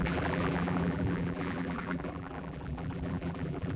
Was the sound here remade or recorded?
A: remade